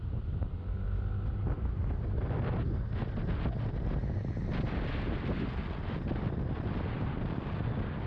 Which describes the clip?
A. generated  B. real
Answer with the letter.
B